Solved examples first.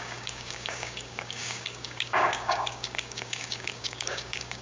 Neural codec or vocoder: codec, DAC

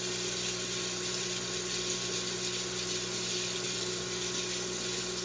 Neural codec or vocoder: none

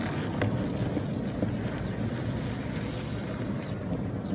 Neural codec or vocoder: none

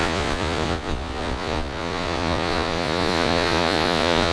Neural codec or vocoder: vocoder, Vocos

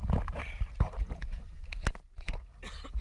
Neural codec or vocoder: none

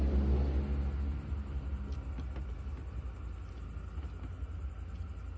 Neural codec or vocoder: none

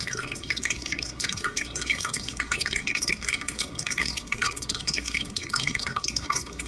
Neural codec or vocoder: codec, SNAC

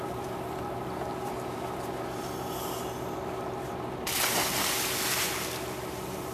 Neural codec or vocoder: none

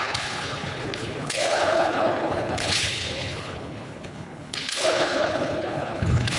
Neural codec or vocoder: codec, HILCodec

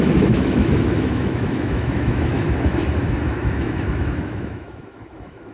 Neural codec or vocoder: autoencoder, DAC-VAE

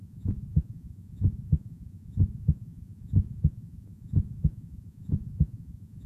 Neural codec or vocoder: vocoder, Vocos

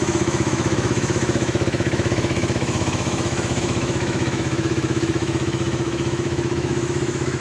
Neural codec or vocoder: autoencoder, DAC-VAE